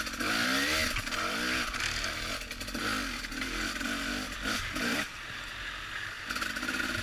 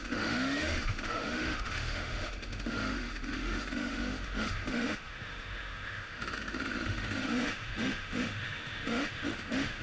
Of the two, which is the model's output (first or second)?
second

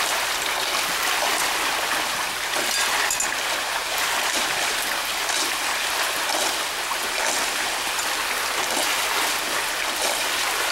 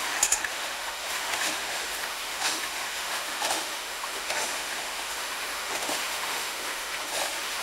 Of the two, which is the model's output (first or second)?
second